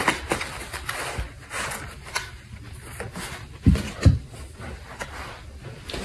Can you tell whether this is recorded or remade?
recorded